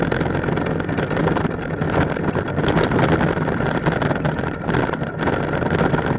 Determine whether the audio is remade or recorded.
recorded